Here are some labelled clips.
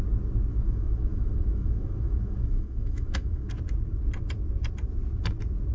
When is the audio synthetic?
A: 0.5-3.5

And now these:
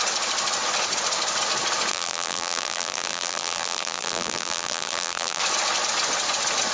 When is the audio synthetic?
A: 1.9-5.4

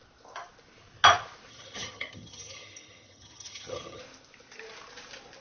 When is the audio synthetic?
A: 1.5-4.0

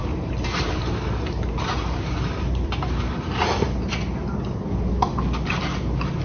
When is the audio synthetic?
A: 0.0-3.4